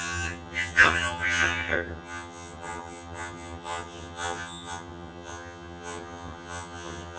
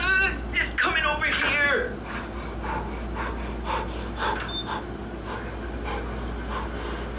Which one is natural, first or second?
second